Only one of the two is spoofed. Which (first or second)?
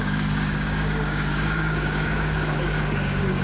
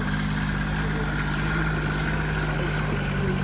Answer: first